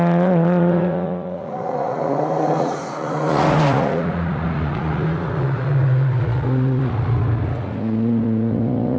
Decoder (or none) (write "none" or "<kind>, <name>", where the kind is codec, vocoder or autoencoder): vocoder, Vocos